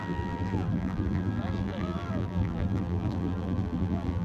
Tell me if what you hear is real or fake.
fake